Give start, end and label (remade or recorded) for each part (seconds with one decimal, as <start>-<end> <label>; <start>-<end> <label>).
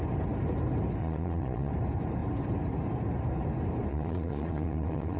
0.0-1.0 recorded; 1.0-1.7 remade; 1.7-3.9 recorded; 3.9-5.2 remade